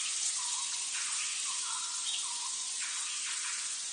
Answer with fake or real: fake